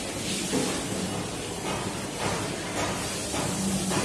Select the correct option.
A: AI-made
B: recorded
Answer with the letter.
B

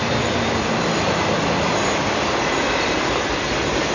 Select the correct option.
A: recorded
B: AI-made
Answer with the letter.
A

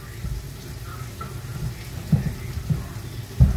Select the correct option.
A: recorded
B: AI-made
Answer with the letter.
A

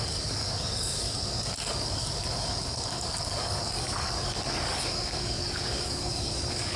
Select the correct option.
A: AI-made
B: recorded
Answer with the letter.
A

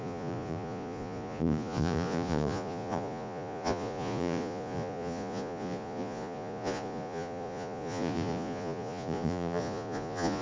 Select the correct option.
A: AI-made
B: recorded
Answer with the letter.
A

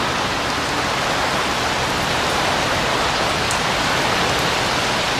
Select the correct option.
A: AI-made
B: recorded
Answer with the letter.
B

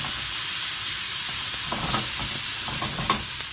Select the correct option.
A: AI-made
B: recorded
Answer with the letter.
A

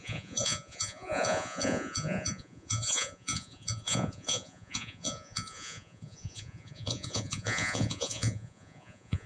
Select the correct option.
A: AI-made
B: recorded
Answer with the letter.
A